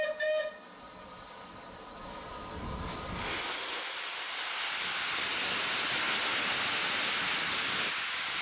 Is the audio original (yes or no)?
yes